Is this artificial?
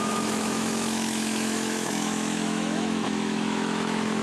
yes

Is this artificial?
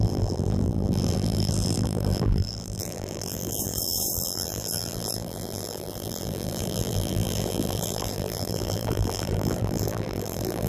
yes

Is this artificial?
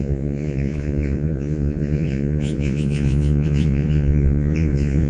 yes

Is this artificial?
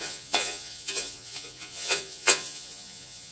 yes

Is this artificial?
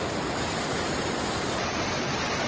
no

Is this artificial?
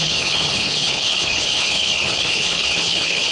yes